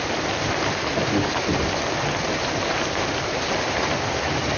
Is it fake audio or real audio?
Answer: real